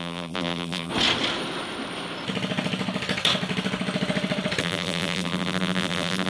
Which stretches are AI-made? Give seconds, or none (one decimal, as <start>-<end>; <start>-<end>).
0.0-0.9; 4.6-6.3